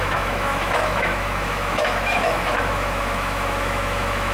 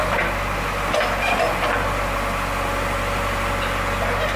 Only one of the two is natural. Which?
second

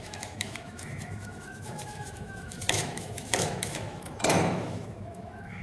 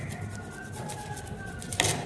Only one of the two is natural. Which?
second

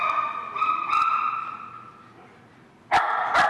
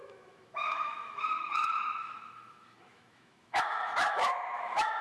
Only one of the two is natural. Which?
first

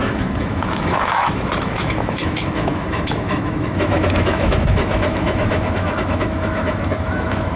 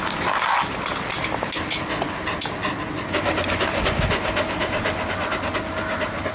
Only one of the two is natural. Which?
second